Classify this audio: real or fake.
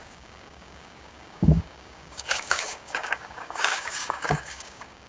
fake